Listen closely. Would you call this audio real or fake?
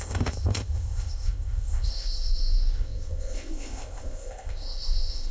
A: fake